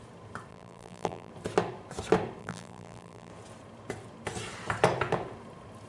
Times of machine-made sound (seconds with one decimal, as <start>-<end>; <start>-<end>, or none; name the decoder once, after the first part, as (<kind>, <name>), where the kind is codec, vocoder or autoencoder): 0.5-1.3 (vocoder, BigVGAN v2); 2.4-3.3